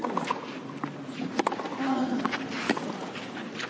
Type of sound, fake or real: real